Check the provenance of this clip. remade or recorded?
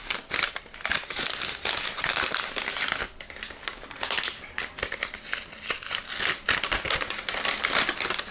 recorded